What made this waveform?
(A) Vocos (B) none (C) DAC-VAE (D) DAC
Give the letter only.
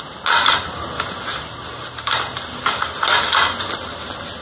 B